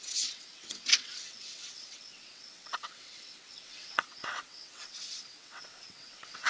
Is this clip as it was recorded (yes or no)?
no